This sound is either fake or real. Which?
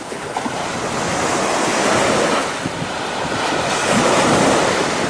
real